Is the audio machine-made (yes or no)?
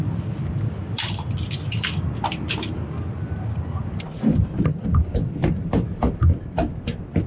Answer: yes